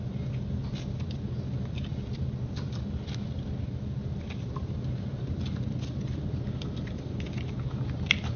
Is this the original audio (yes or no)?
yes